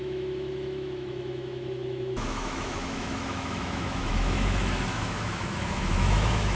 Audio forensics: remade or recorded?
remade